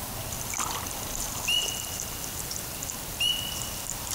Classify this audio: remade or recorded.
recorded